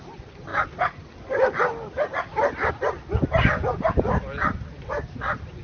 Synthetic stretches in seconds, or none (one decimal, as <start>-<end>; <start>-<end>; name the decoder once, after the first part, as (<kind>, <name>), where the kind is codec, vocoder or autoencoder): 0.5-2.7 (vocoder, BigVGAN v2); 3.7-5.6